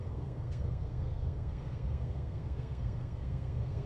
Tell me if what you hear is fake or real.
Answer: fake